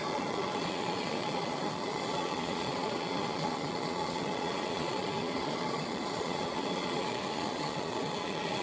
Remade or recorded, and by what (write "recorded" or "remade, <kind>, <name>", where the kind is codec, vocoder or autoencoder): remade, vocoder, Vocos